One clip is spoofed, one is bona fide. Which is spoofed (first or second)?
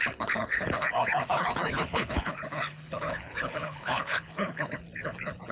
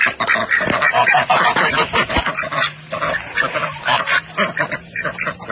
first